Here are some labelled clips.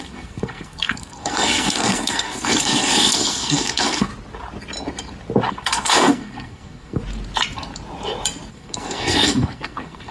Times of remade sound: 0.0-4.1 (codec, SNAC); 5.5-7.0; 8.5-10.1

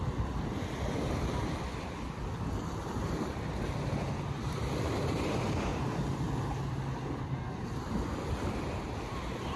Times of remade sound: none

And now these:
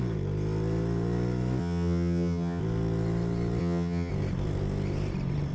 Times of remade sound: 1.6-2.6 (vocoder, HiFi-GAN); 3.6-4.1

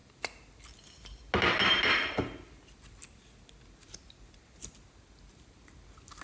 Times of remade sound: none

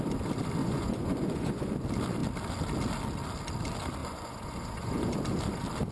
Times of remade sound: 0.6-1.7 (vocoder, Vocos); 4.0-5.1

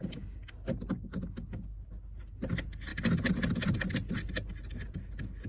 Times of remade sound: none

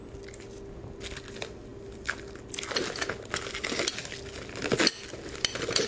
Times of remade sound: none